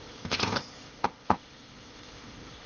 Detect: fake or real fake